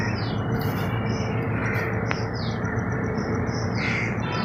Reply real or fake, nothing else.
fake